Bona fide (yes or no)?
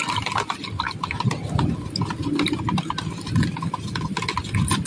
yes